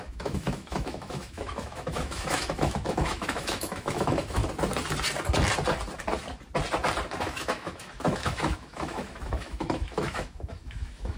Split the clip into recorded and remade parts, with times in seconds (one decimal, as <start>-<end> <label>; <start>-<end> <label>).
0.0-4.4 remade; 4.4-7.2 recorded; 7.2-11.2 remade